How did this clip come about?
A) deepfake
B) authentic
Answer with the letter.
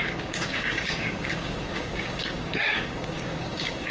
A